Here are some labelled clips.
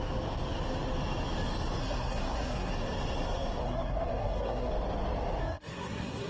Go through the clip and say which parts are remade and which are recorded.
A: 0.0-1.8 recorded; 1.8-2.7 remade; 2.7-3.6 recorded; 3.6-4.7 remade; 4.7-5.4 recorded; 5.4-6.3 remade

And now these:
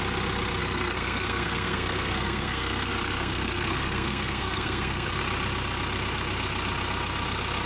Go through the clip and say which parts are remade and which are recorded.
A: 0.0-0.6 recorded; 0.6-5.2 remade; 5.2-7.7 recorded

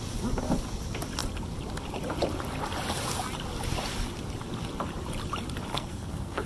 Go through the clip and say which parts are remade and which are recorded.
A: 0.0-5.7 recorded; 5.7-6.5 remade

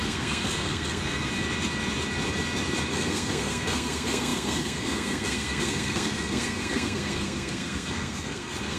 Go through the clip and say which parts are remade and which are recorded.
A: 0.0-1.3 remade; 1.3-2.9 recorded; 2.9-8.8 remade